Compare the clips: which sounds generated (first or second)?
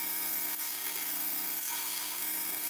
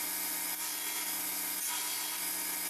first